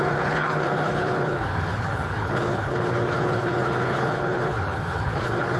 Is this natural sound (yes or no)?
no